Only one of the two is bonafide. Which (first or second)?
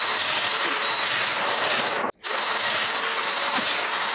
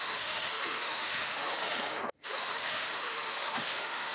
first